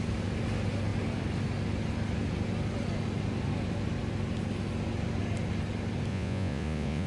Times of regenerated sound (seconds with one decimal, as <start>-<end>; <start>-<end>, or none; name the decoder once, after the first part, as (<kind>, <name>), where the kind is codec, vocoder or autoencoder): 6.1-7.1 (vocoder, Vocos)